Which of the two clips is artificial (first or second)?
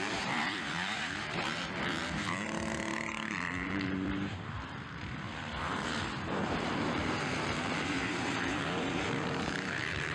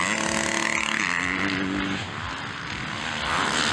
first